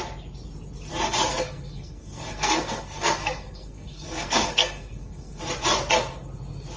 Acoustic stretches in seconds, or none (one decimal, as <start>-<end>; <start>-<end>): 0.0-1.3; 5.4-6.8